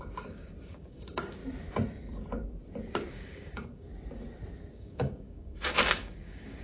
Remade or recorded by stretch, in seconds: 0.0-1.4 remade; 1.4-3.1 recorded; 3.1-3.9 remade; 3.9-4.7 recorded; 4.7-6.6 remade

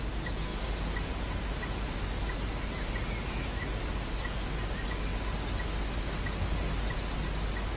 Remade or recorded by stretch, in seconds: 0.0-7.8 recorded

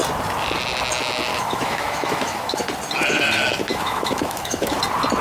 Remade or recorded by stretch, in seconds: 0.0-1.3 recorded; 1.3-2.6 remade; 2.6-3.7 recorded; 3.7-4.8 remade; 4.8-5.2 recorded

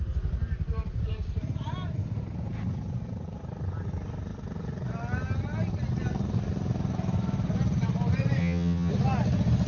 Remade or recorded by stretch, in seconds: 0.0-8.4 recorded; 8.4-8.9 remade; 8.9-9.7 recorded